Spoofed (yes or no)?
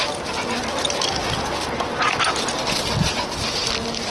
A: no